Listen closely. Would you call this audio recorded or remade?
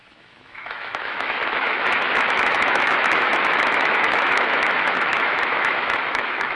remade